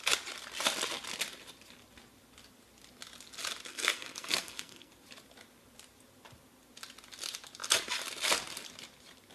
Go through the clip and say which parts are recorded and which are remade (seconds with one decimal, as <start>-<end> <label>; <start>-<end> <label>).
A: 0.0-3.7 recorded; 3.7-4.9 remade; 4.9-9.3 recorded